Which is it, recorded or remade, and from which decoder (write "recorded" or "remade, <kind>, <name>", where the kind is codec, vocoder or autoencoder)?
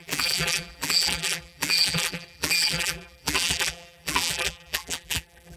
remade, vocoder, BigVGAN v2